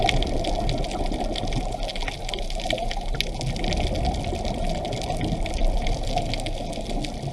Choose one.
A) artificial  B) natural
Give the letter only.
B